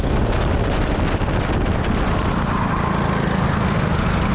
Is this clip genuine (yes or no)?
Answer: yes